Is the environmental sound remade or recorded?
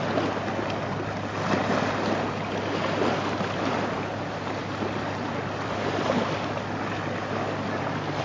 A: recorded